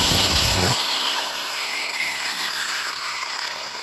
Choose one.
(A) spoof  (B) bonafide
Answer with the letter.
A